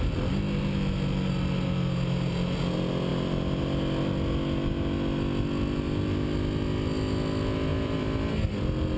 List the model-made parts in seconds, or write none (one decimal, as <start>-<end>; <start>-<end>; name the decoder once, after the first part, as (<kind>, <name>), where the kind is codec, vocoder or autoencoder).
3.1-3.6 (vocoder, BigVGAN v2); 7.7-8.5

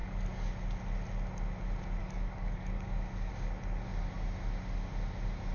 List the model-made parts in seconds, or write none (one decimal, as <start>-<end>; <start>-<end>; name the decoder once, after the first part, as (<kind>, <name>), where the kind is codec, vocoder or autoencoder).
0.0-0.5 (codec, DAC); 2.0-3.3

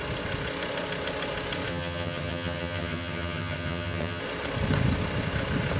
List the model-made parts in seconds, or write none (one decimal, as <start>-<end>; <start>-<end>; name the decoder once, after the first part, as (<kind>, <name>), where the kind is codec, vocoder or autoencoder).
1.7-4.2 (vocoder, HiFi-GAN)